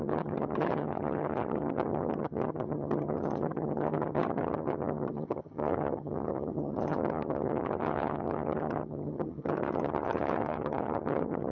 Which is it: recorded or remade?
remade